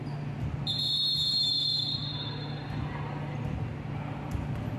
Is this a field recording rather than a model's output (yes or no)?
yes